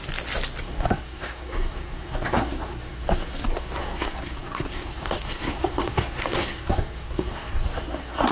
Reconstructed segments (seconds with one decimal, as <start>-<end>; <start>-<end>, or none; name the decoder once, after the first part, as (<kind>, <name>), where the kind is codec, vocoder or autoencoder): 0.6-8.3 (codec, SNAC)